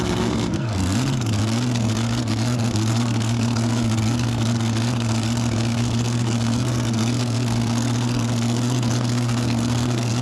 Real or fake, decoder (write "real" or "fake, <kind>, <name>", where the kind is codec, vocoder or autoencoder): fake, codec, SNAC